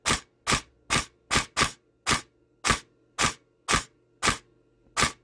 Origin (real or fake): real